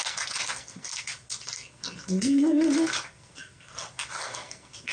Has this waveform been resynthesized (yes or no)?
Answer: yes